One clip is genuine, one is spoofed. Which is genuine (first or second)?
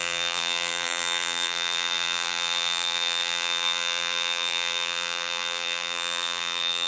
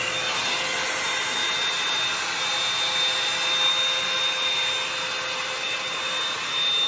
second